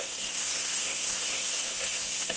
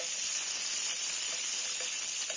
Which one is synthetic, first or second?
first